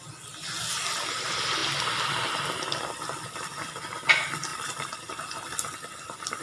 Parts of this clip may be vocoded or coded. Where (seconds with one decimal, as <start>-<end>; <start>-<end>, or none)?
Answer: 1.6-3.7; 4.5-5.1